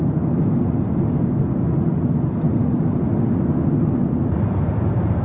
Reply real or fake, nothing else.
real